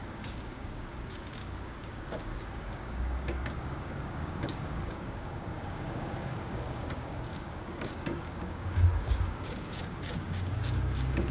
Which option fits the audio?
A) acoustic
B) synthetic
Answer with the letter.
B